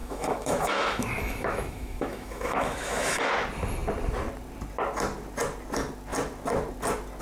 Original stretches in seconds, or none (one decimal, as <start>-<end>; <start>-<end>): 3.3-7.2